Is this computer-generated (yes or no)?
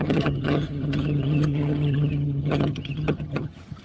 yes